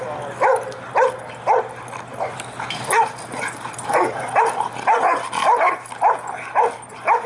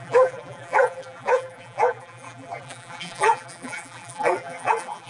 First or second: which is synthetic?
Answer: second